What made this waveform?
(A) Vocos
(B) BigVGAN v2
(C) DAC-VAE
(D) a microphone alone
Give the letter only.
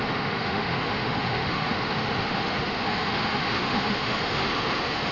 C